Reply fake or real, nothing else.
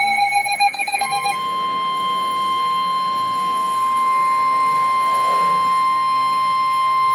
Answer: fake